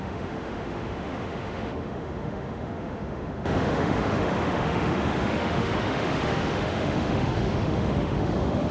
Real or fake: fake